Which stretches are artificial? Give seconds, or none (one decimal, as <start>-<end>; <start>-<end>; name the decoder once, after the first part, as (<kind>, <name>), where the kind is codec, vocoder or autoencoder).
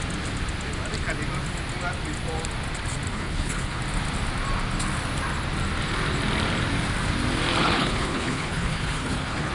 3.1-3.8 (codec, HILCodec); 7.6-9.5